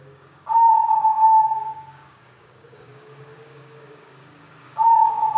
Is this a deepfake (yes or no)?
yes